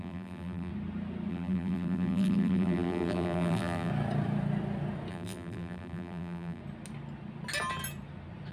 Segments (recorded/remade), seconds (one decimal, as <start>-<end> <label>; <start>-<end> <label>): 0.0-0.7 remade; 0.7-1.3 recorded; 1.3-3.9 remade; 3.9-5.1 recorded; 5.1-6.6 remade; 6.6-8.5 recorded